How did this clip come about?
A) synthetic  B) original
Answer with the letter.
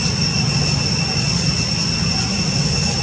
B